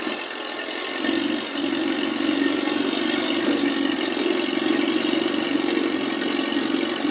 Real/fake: real